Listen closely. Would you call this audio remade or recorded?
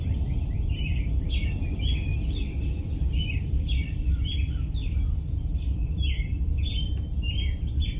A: remade